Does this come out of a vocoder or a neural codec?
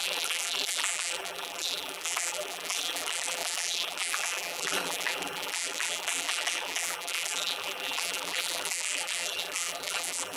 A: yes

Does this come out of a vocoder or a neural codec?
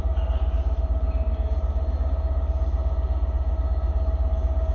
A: no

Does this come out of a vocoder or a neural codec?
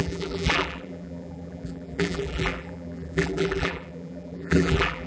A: yes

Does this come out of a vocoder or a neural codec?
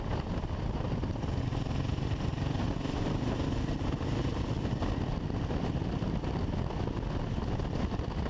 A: no